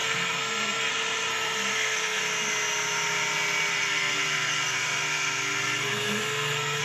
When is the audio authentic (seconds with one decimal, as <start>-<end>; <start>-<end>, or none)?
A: 0.9-1.3; 2.2-3.7